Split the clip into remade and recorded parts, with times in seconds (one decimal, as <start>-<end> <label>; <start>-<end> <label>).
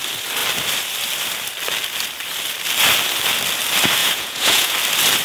0.0-4.0 recorded; 4.0-4.7 remade; 4.7-5.2 recorded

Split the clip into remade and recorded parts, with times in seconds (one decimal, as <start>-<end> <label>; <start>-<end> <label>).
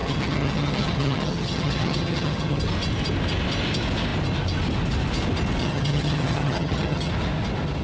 0.0-2.6 remade; 2.6-5.6 recorded; 5.6-7.1 remade; 7.1-7.8 recorded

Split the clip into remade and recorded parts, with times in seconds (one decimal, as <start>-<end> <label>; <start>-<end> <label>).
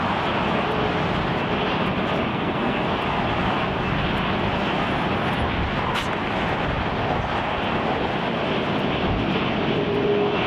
0.0-2.3 recorded; 2.3-2.9 remade; 2.9-10.5 recorded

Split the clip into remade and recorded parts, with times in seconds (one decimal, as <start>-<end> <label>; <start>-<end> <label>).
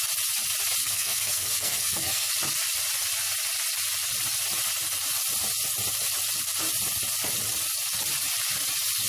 0.0-0.8 recorded; 0.8-2.3 remade; 2.3-9.1 recorded